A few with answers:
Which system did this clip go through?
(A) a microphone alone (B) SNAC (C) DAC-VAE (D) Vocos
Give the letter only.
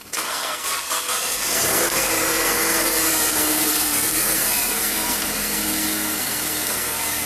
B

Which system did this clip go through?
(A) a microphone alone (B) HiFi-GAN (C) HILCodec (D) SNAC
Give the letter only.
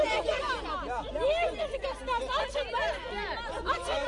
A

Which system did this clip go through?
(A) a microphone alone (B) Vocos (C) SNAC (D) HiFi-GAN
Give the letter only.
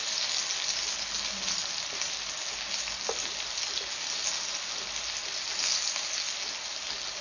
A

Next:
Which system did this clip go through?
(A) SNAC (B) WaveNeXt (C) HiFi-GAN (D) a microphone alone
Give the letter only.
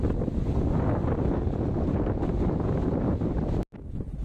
D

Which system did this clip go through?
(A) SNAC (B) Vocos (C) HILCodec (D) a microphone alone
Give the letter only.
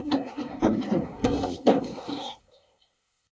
A